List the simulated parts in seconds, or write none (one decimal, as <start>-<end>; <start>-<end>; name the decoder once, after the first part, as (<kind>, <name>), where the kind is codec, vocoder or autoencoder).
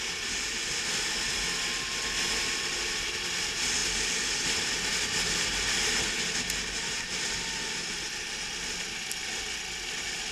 3.8-4.7 (vocoder, BigVGAN v2)